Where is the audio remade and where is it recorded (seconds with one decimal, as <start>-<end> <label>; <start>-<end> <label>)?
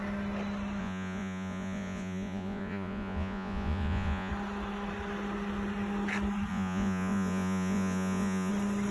0.0-0.8 recorded; 0.8-4.3 remade; 4.3-6.5 recorded; 6.5-8.5 remade; 8.5-8.9 recorded